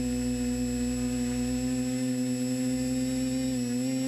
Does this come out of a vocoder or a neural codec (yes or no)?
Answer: no